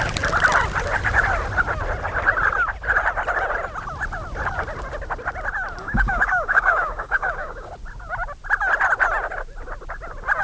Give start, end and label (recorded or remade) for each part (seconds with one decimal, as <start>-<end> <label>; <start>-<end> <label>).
0.0-5.8 recorded; 5.8-7.7 remade; 7.7-10.4 recorded